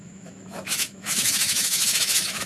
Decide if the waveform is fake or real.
fake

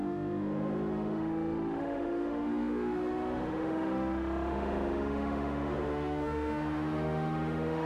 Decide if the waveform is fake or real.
fake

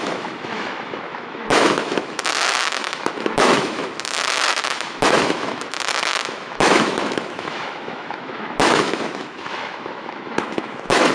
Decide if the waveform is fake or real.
fake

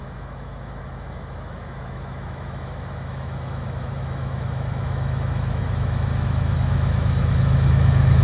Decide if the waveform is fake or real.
fake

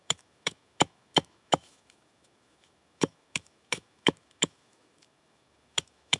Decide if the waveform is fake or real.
fake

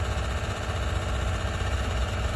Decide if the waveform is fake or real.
real